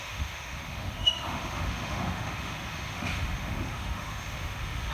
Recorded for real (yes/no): no